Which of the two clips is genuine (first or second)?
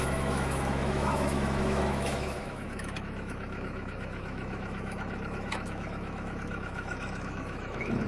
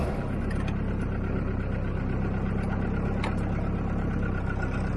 second